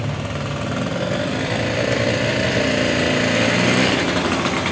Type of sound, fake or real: real